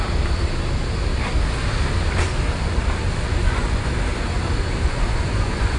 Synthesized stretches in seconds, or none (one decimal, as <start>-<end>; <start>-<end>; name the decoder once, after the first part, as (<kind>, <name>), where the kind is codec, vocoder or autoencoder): 3.3-3.9 (vocoder, Vocos); 4.8-5.8